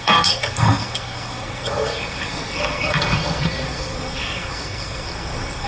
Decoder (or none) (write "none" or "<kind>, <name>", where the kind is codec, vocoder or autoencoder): codec, SNAC